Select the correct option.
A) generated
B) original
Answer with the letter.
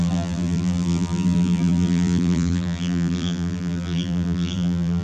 A